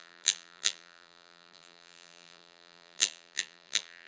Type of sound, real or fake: fake